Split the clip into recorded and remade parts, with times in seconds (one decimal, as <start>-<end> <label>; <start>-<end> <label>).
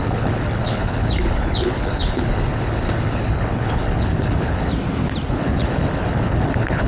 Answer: 0.0-4.7 remade; 4.7-5.3 recorded; 5.3-6.9 remade